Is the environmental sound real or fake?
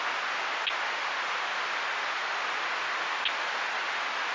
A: real